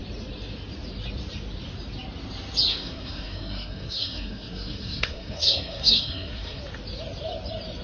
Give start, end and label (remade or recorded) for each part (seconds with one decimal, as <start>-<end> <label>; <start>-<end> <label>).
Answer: 0.0-2.7 recorded; 2.7-6.6 remade; 6.6-7.8 recorded